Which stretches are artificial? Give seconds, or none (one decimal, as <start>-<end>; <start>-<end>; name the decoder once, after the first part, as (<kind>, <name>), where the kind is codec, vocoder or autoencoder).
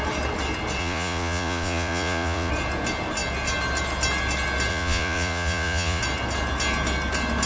0.8-2.5 (vocoder, Vocos); 4.7-6.0